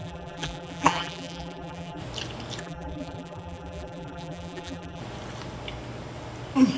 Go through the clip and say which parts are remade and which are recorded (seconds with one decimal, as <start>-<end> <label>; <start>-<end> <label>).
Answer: 0.0-2.0 remade; 2.0-2.6 recorded; 2.6-5.0 remade; 5.0-6.8 recorded